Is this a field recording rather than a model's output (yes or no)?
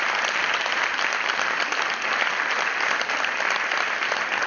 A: yes